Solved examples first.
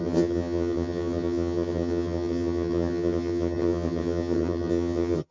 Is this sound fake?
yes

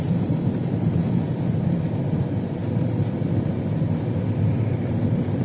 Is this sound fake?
no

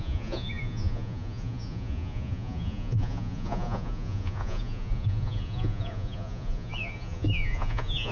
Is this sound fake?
yes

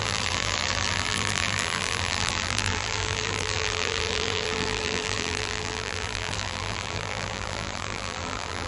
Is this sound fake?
yes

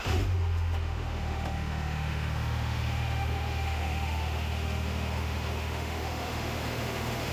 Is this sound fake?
yes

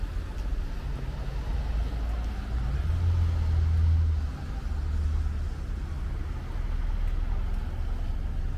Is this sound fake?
no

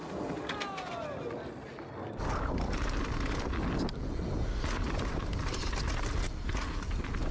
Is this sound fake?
no